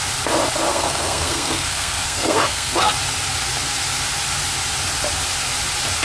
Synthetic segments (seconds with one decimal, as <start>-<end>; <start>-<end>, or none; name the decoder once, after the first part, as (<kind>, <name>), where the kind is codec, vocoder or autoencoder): 0.7-2.9 (codec, SNAC)